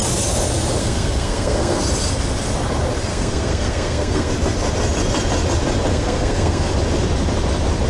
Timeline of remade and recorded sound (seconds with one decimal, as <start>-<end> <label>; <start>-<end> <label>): 0.0-0.8 recorded; 0.8-1.8 remade; 1.8-3.1 recorded; 3.1-4.3 remade; 4.3-5.9 recorded; 5.9-6.7 remade; 6.7-7.9 recorded